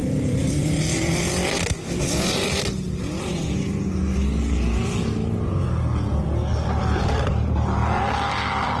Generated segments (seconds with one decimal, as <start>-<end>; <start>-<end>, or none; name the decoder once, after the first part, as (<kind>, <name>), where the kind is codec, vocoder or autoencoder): 0.0-0.6 (vocoder, BigVGAN v2); 6.5-7.2